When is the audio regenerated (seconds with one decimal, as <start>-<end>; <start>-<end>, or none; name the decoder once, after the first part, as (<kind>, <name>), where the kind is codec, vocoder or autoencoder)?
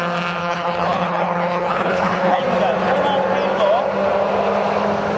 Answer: 0.4-2.4 (codec, HILCodec)